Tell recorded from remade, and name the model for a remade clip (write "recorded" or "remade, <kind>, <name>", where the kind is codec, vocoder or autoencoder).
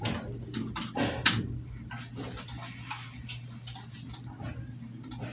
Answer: recorded